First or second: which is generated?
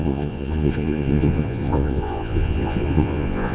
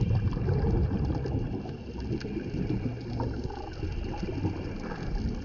first